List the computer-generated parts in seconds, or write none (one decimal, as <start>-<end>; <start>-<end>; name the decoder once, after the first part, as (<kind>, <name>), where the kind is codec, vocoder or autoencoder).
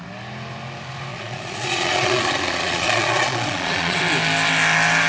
1.1-4.0 (vocoder, Vocos)